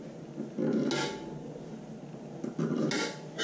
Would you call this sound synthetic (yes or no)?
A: no